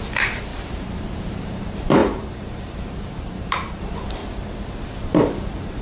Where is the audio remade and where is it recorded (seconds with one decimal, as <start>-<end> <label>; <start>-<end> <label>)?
0.0-4.2 remade; 4.2-5.0 recorded; 5.0-5.8 remade